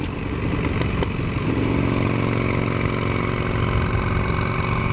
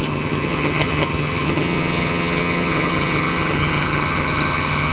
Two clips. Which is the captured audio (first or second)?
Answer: first